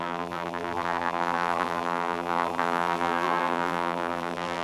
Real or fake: fake